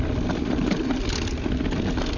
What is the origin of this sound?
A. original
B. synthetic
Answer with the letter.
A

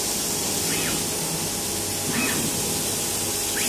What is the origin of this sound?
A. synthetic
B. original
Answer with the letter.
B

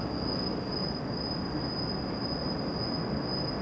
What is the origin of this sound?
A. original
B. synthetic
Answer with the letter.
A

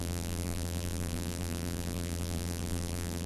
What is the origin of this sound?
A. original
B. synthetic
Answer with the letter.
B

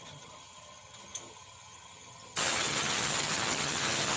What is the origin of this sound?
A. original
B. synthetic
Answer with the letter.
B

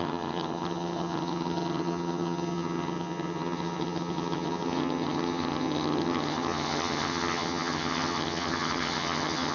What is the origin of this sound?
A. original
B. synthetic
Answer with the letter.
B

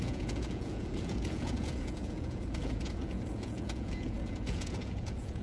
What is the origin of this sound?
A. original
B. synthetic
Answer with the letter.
B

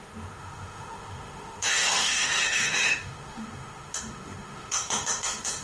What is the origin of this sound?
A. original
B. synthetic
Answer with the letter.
B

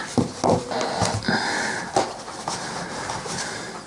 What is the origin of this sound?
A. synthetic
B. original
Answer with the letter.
B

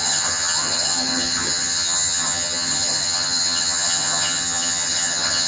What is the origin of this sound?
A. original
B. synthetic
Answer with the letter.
B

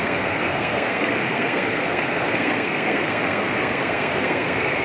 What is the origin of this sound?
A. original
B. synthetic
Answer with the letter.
B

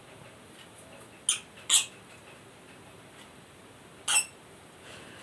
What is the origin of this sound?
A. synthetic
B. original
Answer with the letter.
B